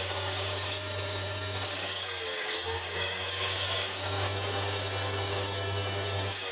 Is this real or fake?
fake